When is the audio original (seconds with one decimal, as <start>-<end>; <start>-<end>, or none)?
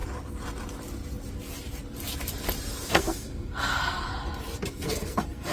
0.0-2.9; 4.1-4.7